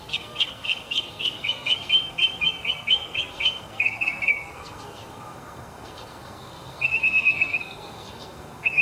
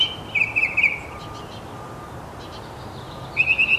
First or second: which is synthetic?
first